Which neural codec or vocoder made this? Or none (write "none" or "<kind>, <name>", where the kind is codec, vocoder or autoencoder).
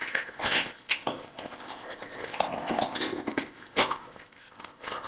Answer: codec, ZipCodec